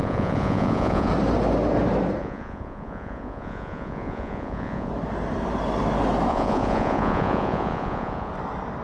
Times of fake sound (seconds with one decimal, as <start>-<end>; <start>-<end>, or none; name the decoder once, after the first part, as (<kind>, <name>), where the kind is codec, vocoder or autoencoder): 0.0-1.1 (vocoder, Vocos); 2.2-4.9; 6.3-8.3